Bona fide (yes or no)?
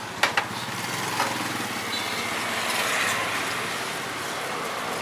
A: yes